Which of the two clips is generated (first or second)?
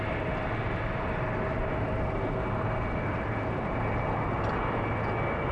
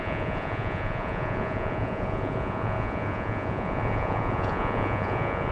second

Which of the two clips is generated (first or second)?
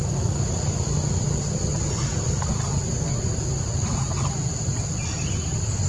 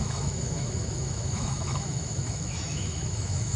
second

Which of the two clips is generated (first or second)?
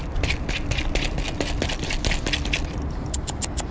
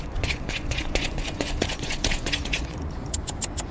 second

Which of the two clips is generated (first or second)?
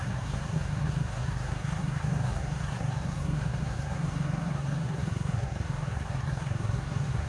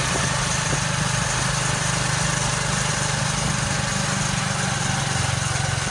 first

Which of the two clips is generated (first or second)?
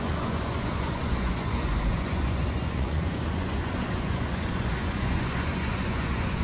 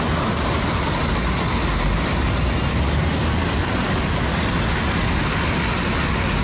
first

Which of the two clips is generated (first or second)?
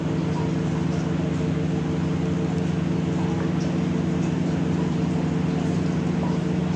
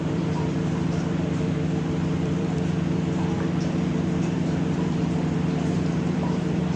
second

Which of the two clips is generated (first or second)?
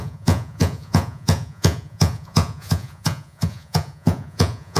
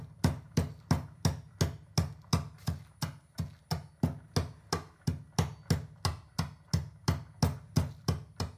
first